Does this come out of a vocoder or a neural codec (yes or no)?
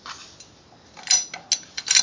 no